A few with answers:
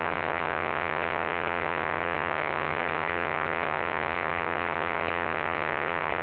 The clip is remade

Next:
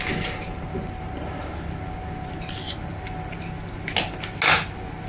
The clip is recorded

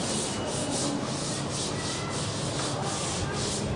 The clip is recorded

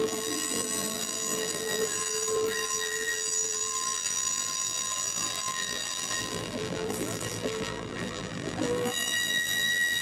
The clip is remade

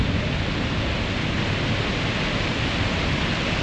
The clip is recorded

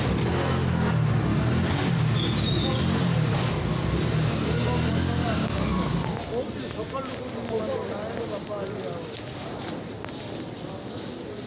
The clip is recorded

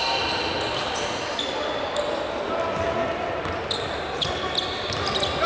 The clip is recorded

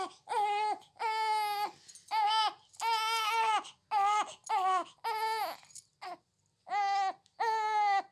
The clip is recorded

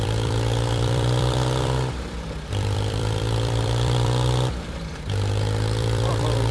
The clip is remade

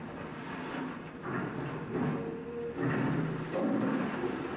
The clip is recorded